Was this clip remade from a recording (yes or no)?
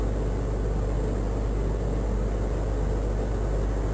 no